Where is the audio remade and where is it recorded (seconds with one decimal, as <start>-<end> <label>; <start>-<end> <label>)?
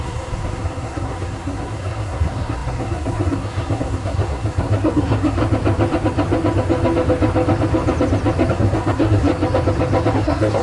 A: 0.0-5.4 remade; 5.4-8.5 recorded; 8.5-9.3 remade; 9.3-10.1 recorded; 10.1-10.6 remade